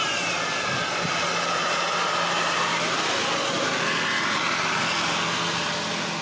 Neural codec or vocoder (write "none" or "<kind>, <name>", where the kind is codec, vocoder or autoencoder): none